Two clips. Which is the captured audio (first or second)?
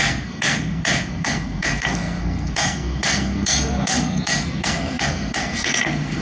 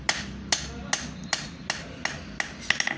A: second